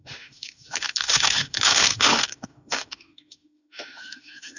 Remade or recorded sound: remade